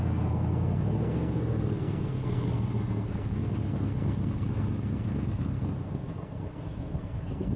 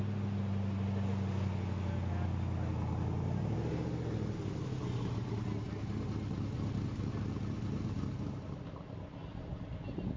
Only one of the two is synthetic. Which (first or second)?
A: first